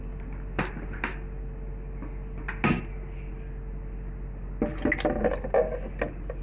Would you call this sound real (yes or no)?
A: yes